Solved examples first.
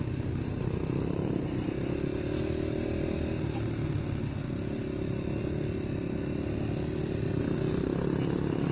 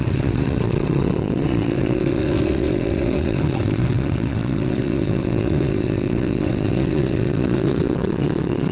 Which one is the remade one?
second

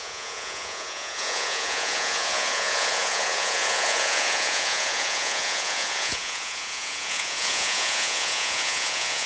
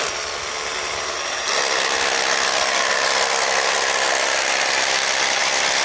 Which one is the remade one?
first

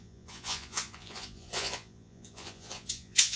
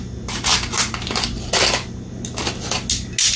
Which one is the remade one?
first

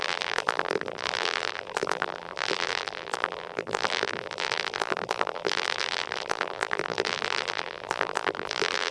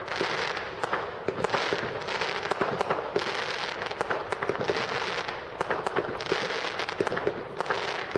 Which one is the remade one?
first